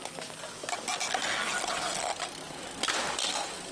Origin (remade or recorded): recorded